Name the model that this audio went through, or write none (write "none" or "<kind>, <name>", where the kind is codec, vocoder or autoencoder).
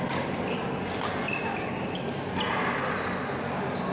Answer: none